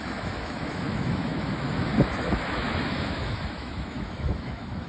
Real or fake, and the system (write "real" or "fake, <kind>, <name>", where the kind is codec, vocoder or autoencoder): fake, autoencoder, DAC-VAE